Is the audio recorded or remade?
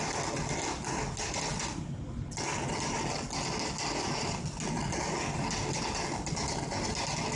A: recorded